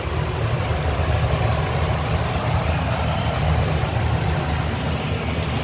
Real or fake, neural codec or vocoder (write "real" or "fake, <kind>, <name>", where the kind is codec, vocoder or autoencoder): real